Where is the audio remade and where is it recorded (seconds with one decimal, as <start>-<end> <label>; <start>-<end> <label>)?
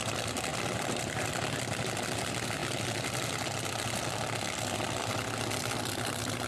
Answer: 0.0-2.6 remade; 2.6-5.6 recorded; 5.6-6.5 remade